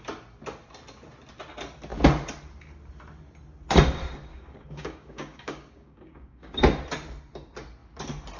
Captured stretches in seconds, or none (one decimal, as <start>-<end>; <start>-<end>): 0.0-4.3; 6.6-8.4